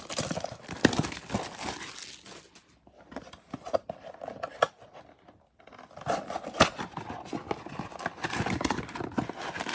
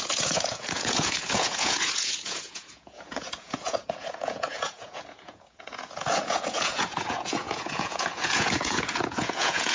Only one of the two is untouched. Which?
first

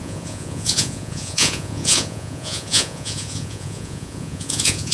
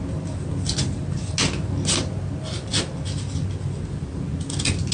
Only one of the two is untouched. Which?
second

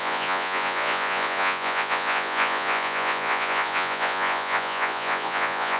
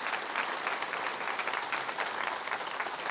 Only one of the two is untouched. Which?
second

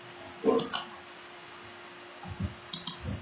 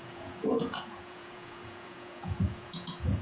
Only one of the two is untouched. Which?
first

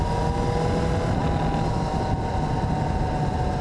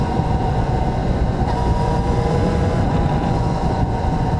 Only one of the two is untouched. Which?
first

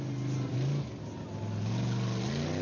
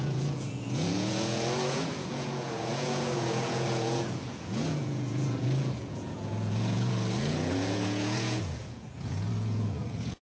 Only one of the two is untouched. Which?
first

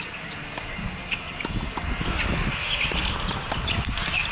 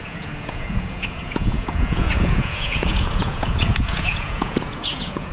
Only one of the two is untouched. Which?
first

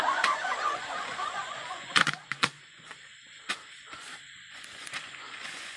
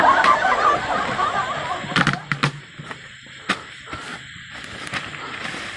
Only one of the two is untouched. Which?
second